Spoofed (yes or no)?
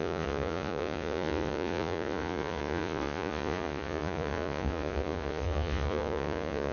yes